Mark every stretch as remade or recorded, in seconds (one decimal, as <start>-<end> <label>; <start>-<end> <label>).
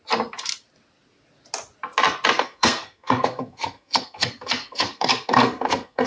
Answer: 0.0-2.3 recorded; 2.3-6.1 remade